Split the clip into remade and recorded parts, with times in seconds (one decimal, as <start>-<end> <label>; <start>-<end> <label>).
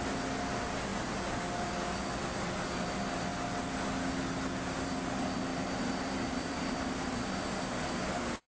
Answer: 0.0-5.5 recorded; 5.5-6.6 remade; 6.6-8.6 recorded